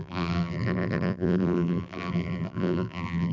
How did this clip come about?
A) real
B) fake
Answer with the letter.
B